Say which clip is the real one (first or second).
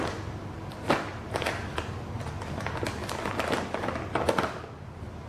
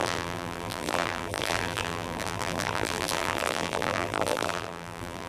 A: first